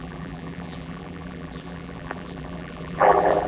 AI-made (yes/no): yes